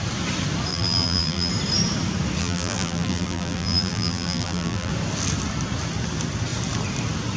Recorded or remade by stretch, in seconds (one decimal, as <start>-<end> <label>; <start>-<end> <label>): 0.0-0.7 recorded; 0.7-1.5 remade; 1.5-2.4 recorded; 2.4-4.9 remade; 4.9-7.4 recorded